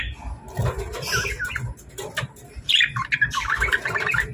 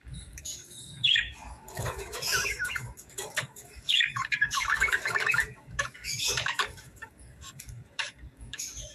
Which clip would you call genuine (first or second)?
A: first